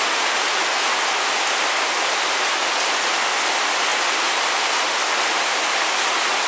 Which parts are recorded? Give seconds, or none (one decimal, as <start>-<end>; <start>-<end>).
0.0-6.5

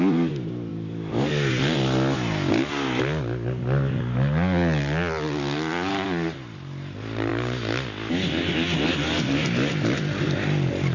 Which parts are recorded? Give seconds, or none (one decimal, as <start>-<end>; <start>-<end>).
0.0-0.7; 1.5-10.9